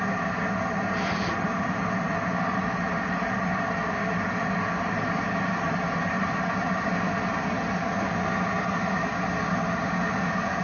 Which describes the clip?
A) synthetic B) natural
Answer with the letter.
B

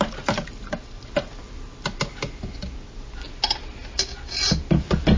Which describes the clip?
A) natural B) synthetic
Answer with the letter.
A